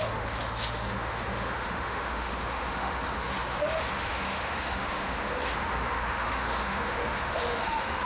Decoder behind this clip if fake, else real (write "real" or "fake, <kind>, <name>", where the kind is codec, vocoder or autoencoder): fake, autoencoder, DAC-VAE